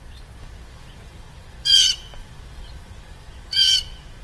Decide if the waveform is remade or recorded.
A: remade